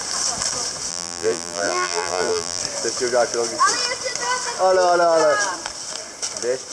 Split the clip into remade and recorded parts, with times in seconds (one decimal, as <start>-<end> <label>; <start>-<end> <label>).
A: 0.0-0.9 recorded; 0.9-2.6 remade; 2.6-6.7 recorded